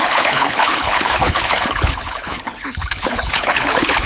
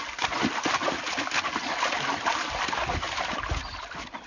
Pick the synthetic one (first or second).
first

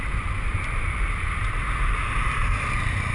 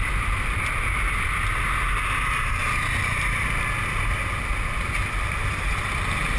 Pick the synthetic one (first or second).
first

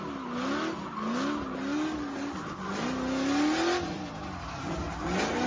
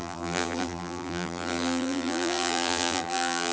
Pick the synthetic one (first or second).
second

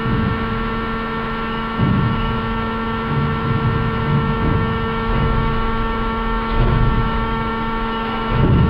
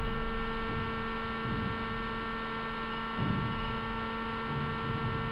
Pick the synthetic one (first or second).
first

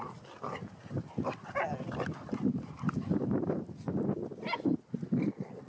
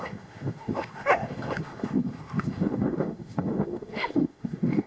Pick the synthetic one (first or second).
second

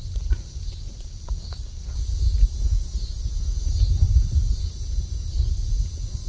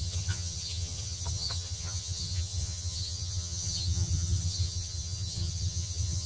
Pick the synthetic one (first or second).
second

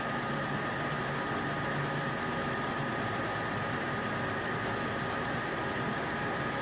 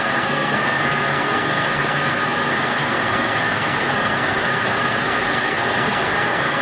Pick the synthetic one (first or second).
second